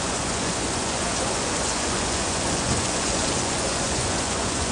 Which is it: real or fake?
fake